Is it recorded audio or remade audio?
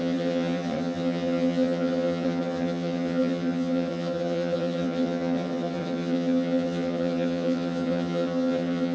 remade